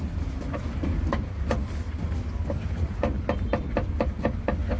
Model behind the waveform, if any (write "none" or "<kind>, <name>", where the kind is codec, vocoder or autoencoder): none